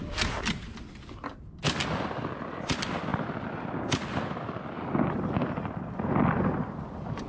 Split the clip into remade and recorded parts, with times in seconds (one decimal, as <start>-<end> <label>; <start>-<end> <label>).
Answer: 0.0-7.3 recorded